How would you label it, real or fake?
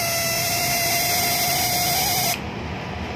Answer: real